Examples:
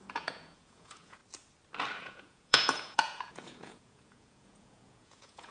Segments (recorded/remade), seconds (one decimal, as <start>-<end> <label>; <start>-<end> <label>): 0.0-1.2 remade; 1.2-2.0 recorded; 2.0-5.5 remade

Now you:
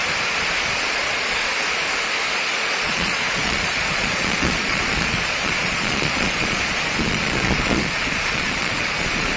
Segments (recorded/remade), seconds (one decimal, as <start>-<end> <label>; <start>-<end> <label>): 0.0-0.9 recorded; 0.9-1.4 remade; 1.4-2.3 recorded; 2.3-9.4 remade

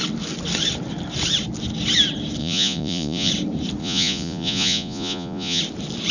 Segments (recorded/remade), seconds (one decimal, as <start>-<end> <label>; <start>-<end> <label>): 0.0-2.4 recorded; 2.4-3.3 remade; 3.3-3.8 recorded; 3.8-5.6 remade; 5.6-6.1 recorded